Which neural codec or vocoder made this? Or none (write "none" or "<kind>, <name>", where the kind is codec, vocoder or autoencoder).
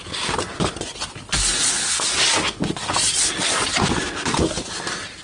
none